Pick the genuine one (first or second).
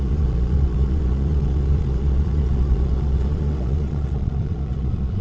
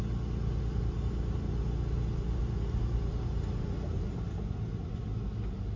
second